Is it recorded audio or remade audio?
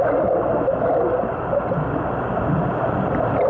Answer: recorded